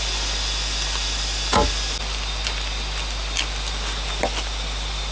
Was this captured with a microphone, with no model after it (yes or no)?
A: yes